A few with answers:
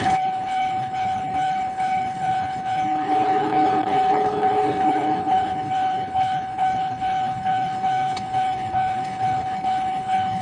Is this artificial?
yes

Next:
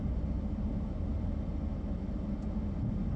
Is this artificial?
no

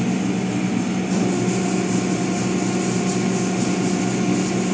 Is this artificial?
no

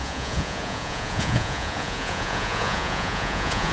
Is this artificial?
yes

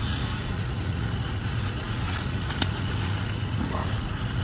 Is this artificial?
yes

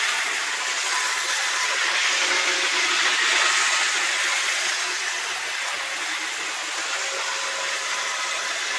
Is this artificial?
no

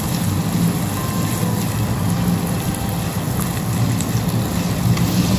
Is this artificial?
no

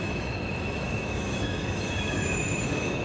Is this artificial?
yes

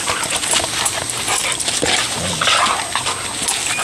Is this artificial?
no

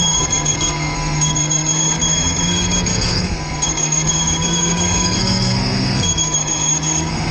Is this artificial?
yes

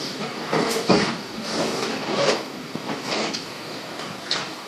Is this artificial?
yes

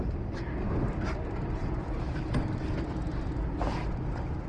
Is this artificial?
no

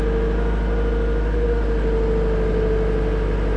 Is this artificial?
no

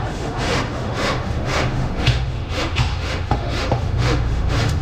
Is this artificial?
yes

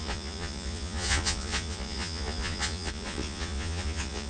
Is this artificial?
yes